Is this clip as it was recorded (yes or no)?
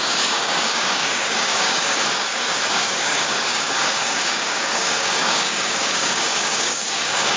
no